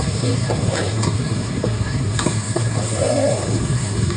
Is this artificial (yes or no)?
yes